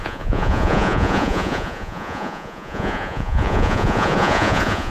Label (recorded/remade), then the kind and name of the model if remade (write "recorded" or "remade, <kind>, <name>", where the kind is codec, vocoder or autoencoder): remade, vocoder, Vocos